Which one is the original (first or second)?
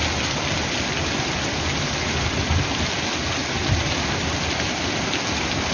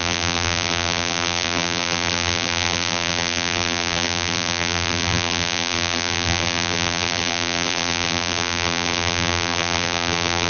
first